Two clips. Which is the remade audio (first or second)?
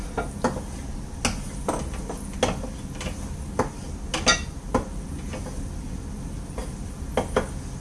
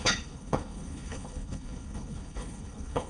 second